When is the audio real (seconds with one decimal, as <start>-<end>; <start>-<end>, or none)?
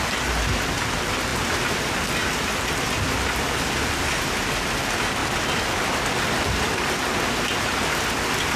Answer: 0.0-8.6